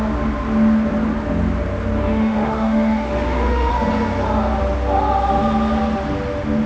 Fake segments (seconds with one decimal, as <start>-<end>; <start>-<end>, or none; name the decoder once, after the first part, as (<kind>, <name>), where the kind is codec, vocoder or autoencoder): 2.0-3.7 (autoencoder, DAC-VAE)